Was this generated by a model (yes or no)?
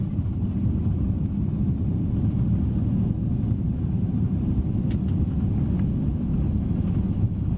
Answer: no